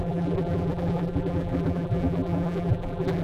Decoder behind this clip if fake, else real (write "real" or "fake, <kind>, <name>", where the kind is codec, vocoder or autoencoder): fake, vocoder, BigVGAN v2